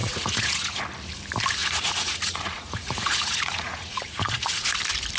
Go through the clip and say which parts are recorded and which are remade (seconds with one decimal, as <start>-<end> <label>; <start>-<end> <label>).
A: 0.0-0.8 remade; 0.8-1.6 recorded; 1.6-4.7 remade; 4.7-5.2 recorded